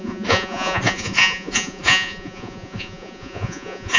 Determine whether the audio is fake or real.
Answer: fake